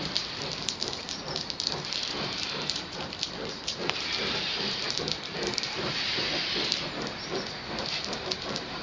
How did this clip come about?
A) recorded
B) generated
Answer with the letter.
B